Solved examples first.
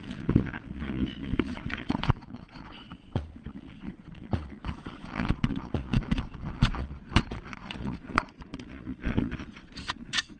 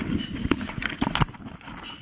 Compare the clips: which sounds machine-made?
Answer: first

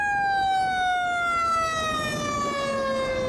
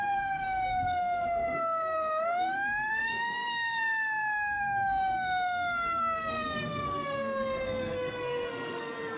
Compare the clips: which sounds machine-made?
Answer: second